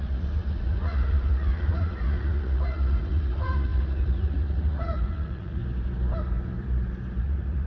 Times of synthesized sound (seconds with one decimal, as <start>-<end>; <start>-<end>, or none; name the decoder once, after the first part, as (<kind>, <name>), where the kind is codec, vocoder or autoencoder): 0.0-5.6 (vocoder, Vocos); 7.2-7.7